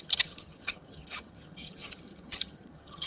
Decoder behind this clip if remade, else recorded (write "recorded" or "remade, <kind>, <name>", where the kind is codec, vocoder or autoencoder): remade, vocoder, HiFi-GAN